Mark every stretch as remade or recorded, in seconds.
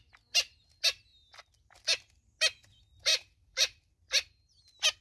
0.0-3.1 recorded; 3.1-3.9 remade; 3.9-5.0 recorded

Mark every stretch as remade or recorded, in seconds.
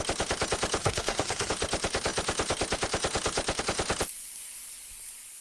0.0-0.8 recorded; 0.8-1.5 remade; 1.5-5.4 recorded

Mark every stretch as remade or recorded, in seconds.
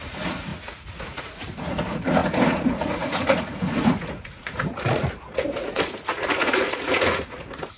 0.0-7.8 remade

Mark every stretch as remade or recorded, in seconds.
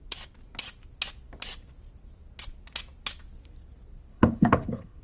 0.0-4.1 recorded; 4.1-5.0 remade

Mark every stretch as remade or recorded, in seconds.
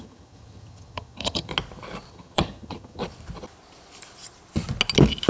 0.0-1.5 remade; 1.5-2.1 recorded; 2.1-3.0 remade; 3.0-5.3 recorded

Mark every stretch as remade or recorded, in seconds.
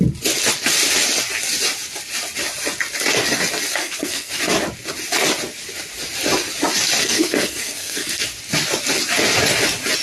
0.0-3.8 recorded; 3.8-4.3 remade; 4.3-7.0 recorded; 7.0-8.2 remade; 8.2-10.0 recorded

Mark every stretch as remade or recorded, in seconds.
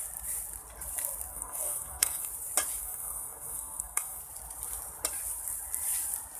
0.0-1.3 recorded; 1.3-2.3 remade; 2.3-2.8 recorded; 2.8-4.2 remade; 4.2-6.4 recorded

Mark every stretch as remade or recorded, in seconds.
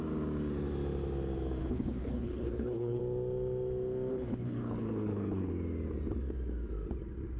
0.0-1.6 recorded; 1.6-3.0 remade; 3.0-4.1 recorded; 4.1-5.5 remade; 5.5-7.4 recorded